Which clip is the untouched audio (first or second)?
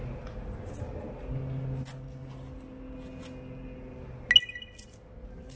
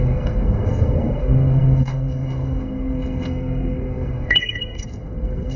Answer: first